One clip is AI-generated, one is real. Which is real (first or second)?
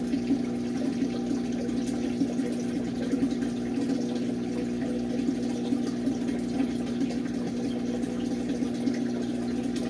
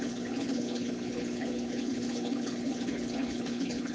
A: first